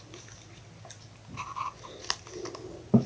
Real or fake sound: real